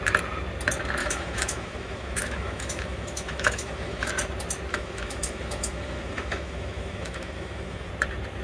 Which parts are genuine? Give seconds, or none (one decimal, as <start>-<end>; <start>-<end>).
0.0-1.0; 4.1-4.7; 7.9-8.4